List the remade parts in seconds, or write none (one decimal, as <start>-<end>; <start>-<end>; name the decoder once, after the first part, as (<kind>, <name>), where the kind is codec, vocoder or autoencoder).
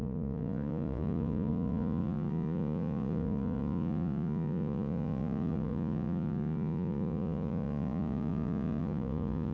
0.0-9.5 (vocoder, Vocos)